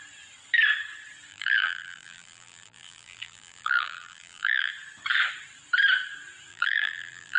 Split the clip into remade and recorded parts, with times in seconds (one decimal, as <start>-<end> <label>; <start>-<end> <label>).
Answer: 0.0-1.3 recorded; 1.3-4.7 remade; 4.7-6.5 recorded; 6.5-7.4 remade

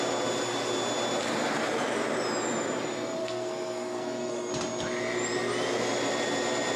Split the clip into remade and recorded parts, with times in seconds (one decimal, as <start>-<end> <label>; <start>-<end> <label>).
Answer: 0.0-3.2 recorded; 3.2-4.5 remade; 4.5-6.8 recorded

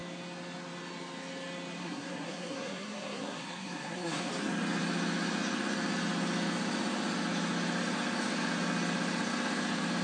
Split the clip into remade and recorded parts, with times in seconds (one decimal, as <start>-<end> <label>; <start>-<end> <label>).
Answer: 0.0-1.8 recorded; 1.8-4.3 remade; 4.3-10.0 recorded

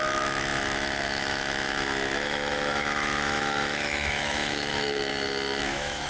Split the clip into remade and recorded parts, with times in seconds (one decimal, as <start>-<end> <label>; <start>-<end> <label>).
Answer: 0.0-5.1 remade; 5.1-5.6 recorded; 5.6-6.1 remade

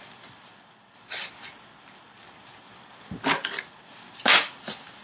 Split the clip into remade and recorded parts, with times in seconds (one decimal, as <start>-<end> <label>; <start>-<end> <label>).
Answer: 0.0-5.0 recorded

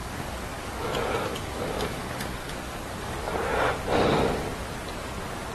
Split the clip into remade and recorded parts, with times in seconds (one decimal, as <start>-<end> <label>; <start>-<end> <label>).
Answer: 0.0-3.3 remade; 3.3-5.5 recorded

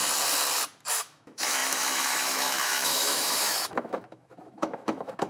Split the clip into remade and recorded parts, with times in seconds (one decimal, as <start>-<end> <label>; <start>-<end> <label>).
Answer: 0.0-0.9 recorded; 0.9-5.3 remade